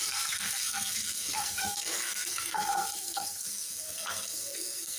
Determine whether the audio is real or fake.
fake